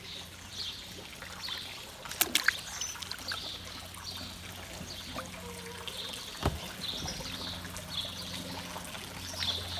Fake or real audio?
real